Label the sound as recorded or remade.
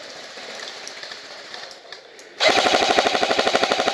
remade